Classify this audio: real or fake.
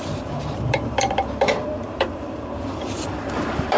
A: fake